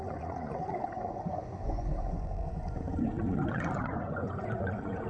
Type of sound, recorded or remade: remade